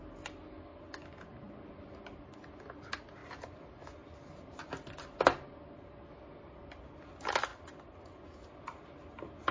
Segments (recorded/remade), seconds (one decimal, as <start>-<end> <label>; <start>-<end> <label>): 0.0-0.7 recorded; 0.7-2.2 remade; 2.2-9.5 recorded